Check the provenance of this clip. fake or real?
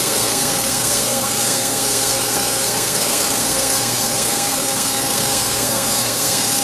fake